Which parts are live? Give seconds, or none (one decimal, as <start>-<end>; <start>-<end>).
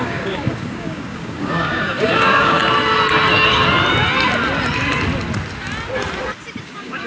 2.6-6.6